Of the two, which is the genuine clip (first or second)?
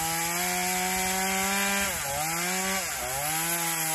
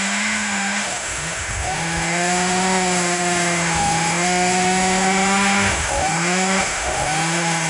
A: first